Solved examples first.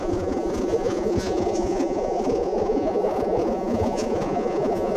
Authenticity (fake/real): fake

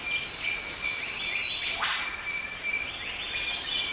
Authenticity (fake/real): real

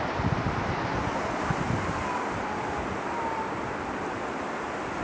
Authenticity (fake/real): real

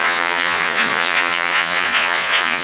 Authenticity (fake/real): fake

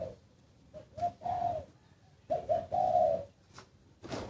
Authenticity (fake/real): real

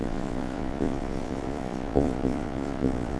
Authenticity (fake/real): fake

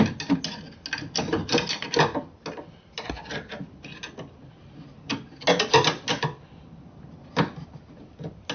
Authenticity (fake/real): real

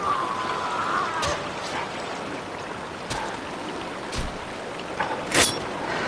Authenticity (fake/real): real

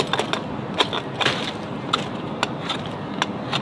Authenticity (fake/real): real